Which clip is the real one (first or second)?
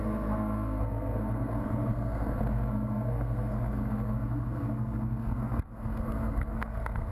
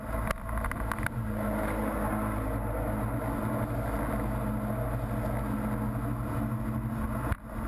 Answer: second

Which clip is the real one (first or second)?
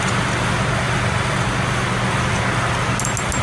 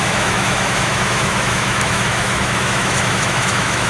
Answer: first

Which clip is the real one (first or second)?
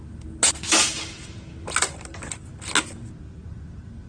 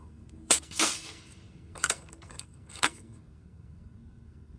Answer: first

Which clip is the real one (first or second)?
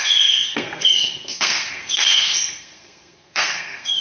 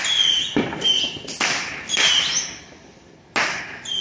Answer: second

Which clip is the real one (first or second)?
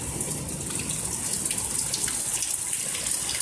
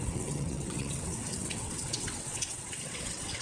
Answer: first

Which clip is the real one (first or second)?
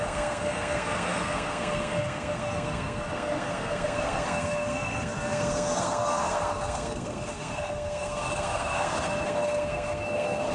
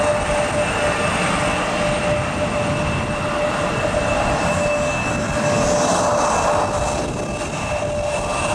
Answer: second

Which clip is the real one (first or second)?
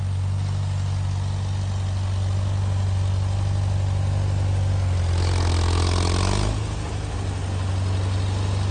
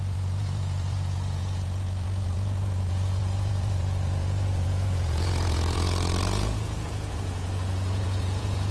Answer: first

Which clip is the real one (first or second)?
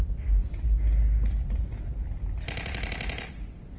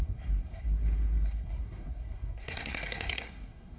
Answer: first